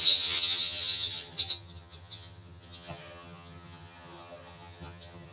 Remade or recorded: remade